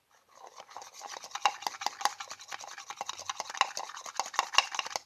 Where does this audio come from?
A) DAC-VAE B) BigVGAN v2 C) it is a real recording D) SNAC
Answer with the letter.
C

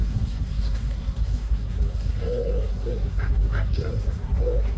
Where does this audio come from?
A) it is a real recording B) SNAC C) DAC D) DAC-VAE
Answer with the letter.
B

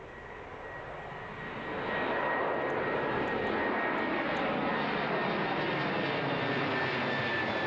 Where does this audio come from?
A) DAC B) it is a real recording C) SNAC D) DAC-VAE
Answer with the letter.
B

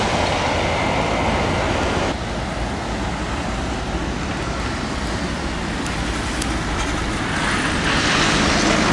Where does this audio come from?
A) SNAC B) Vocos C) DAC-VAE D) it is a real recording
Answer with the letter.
D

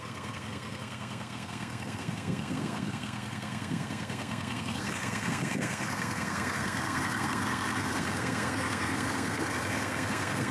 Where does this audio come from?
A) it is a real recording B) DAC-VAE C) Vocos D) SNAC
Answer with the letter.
D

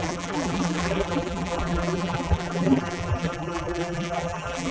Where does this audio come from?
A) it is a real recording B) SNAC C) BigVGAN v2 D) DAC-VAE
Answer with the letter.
C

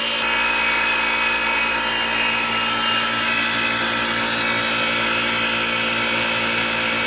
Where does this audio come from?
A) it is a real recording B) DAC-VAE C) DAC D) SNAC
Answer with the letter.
A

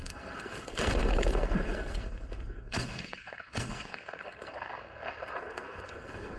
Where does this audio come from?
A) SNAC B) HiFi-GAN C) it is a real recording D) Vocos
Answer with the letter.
A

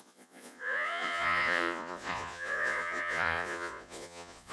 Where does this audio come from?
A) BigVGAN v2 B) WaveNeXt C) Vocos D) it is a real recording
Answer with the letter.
C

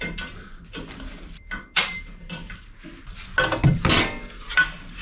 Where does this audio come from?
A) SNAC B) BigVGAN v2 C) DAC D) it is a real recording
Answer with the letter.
D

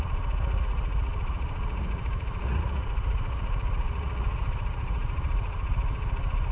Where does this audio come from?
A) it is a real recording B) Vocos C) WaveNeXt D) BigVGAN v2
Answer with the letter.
B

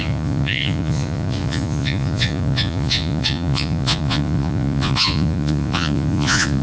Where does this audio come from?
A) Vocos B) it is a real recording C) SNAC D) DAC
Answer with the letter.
A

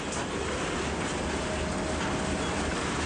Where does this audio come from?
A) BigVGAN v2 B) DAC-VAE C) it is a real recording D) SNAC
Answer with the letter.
C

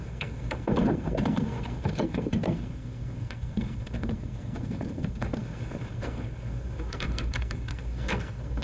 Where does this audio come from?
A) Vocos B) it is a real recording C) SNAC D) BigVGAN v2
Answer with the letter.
C